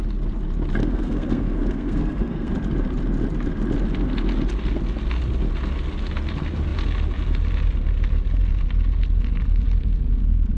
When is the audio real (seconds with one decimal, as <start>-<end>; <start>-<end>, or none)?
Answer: 0.0-0.8; 2.5-10.6